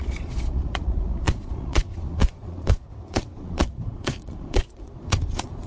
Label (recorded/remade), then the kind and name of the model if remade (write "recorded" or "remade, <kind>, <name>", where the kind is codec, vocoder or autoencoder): remade, vocoder, Vocos